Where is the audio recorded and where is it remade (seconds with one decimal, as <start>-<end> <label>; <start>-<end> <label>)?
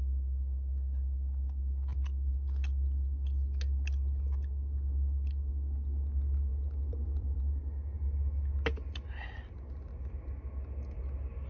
0.0-6.5 recorded; 6.5-7.4 remade; 7.4-11.5 recorded